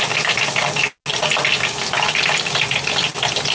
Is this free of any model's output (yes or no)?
yes